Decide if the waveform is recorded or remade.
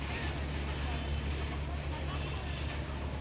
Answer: recorded